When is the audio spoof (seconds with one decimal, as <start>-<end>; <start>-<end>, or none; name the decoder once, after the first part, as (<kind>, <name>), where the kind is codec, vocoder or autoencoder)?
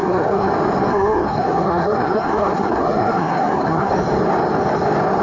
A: 0.0-0.5 (codec, SNAC); 0.9-3.9